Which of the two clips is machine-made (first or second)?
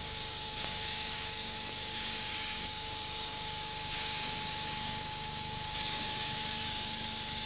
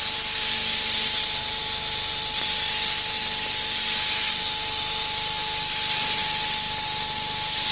first